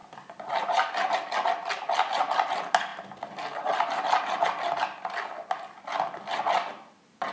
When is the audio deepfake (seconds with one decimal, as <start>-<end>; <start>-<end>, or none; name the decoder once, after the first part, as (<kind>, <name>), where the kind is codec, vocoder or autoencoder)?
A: none